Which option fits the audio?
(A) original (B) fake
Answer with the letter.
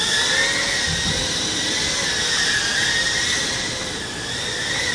A